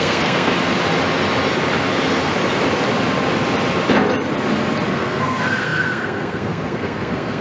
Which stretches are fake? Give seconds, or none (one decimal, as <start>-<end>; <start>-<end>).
0.0-0.5; 4.9-7.4